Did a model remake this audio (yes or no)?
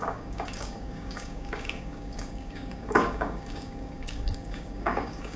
yes